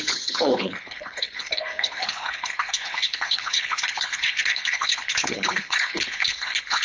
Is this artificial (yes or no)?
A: yes